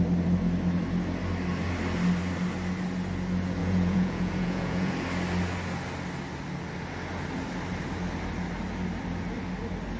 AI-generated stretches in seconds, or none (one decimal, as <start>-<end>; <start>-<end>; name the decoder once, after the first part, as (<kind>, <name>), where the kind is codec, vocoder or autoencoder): 3.6-4.9 (vocoder, Vocos)